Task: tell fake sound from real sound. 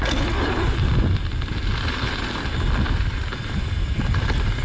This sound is real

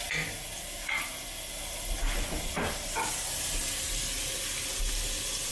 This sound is real